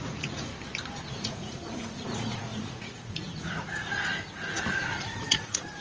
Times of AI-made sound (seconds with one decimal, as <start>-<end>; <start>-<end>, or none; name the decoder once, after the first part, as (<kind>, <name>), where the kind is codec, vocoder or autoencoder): 0.0-0.5 (vocoder, Vocos); 1.1-5.8